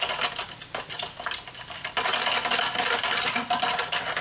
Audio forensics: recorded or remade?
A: recorded